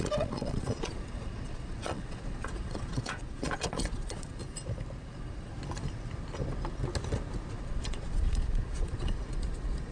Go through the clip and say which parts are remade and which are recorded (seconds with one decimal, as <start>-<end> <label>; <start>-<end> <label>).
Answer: 0.0-4.4 remade; 4.4-5.1 recorded; 5.1-5.5 remade; 5.5-7.5 recorded; 7.5-9.9 remade